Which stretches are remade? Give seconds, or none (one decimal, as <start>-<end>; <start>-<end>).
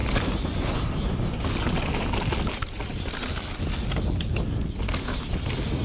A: none